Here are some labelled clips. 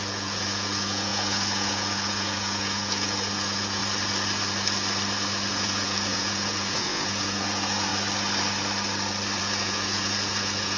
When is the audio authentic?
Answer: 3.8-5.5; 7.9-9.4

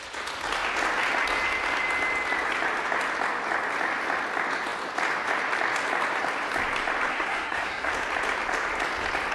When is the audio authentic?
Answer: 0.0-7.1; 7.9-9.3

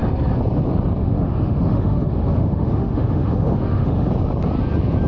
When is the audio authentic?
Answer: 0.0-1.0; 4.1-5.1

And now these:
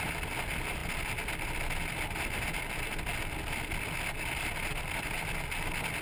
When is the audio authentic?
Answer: 0.0-6.0

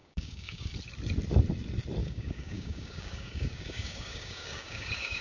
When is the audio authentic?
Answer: 0.7-2.0

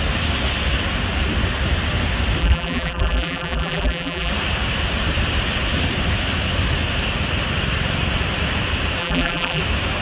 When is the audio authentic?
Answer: 0.0-2.4; 4.3-9.0; 9.6-10.0

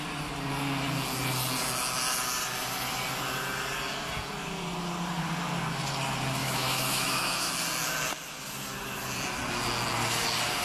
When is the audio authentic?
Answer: 0.0-6.4; 7.5-10.6